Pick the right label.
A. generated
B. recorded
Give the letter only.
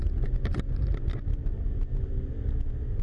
B